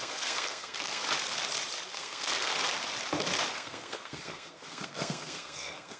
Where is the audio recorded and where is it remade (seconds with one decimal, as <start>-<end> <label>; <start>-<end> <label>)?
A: 0.0-1.0 remade; 1.0-1.9 recorded; 1.9-2.5 remade; 2.5-3.5 recorded; 3.5-6.0 remade